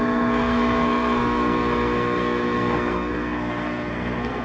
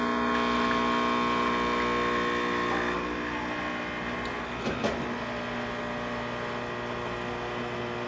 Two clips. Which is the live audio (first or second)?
second